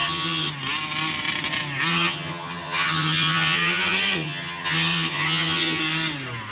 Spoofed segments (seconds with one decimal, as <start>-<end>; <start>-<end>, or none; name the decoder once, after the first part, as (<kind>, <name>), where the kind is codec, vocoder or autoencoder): 0.0-0.5 (vocoder, HiFi-GAN); 1.9-5.8